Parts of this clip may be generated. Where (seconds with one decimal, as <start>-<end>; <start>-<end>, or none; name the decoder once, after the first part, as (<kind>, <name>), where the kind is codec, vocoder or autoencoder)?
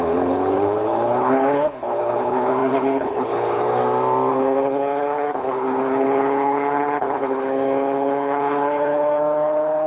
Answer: 0.0-3.8 (codec, HILCodec); 4.3-9.9